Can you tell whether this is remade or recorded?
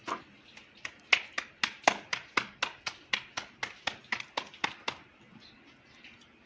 recorded